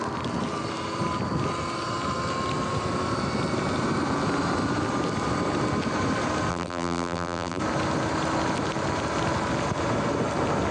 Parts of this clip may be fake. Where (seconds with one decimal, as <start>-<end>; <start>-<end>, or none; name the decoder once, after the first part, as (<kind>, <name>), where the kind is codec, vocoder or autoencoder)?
6.5-7.6 (vocoder, BigVGAN v2)